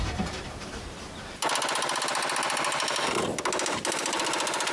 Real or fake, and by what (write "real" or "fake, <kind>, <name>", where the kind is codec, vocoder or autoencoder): real